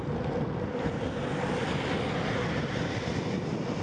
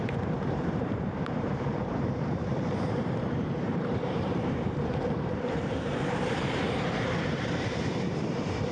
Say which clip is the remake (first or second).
second